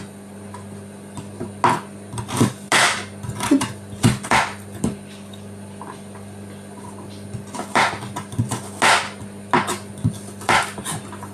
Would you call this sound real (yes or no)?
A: yes